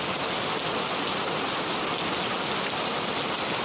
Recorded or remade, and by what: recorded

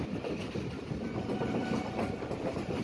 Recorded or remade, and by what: recorded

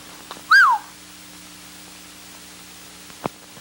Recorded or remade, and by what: recorded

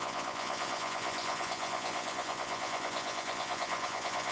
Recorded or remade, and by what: remade, vocoder, Vocos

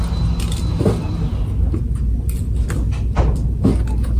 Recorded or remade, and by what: recorded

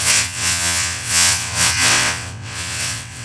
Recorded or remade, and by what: remade, vocoder, WaveNeXt